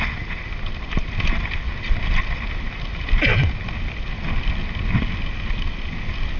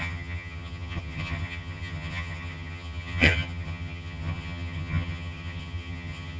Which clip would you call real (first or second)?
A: first